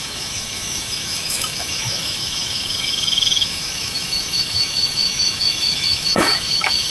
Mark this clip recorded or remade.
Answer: remade